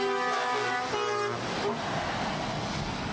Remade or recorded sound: recorded